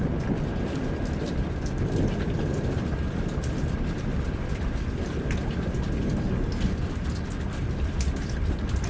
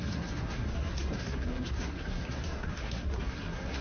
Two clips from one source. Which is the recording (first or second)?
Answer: first